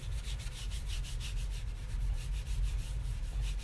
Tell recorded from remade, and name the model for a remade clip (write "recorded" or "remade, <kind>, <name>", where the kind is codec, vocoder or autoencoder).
remade, vocoder, BigVGAN v2